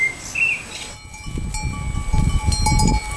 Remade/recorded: recorded